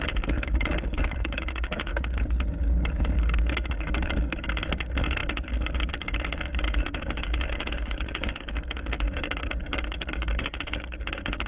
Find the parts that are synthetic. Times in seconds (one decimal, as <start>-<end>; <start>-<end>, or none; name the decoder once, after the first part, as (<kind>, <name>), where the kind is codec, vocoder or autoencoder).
0.0-1.9 (codec, DAC); 2.9-11.5